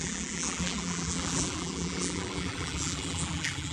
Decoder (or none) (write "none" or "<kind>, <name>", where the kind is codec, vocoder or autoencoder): vocoder, BigVGAN v2